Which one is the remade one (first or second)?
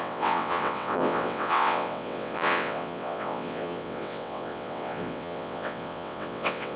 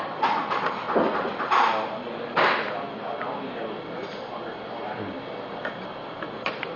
first